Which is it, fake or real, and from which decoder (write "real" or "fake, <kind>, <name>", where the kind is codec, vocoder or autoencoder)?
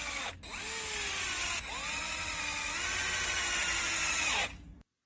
real